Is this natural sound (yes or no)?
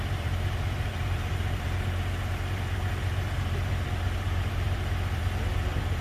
no